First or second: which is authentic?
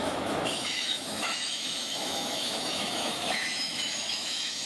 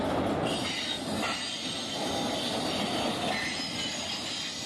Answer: second